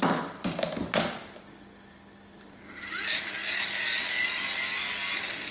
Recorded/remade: recorded